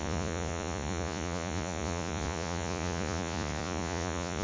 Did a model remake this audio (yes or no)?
yes